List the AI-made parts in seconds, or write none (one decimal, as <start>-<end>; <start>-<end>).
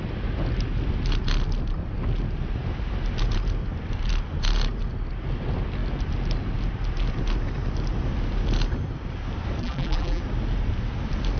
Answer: 9.6-10.2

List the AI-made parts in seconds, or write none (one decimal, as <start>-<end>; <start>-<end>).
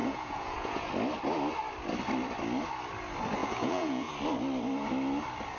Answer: 0.0-0.9; 3.4-4.1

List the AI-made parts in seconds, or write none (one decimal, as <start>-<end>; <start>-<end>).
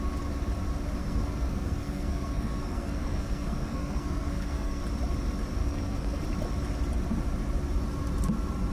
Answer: 1.0-4.8; 5.6-6.2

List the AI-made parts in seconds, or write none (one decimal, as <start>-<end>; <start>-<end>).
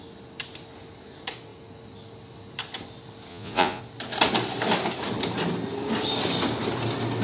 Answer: 3.3-3.8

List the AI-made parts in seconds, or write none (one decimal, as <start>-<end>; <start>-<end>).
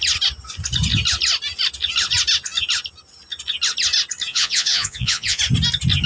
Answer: 4.3-5.4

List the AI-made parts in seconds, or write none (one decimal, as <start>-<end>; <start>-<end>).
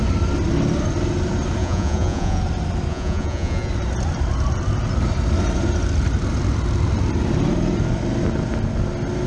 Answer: 1.6-2.4; 2.9-3.7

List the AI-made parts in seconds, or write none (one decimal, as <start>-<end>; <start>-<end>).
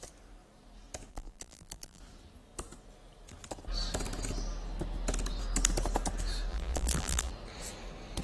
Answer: 1.1-2.0; 6.5-7.3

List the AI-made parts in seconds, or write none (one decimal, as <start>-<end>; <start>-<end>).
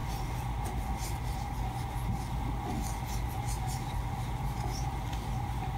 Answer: none